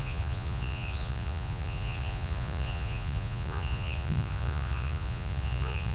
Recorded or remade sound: remade